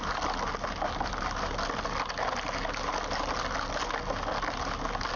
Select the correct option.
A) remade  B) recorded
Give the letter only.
B